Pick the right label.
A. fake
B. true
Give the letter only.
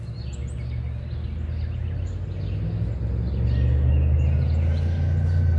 B